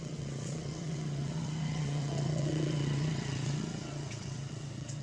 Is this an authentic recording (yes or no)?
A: no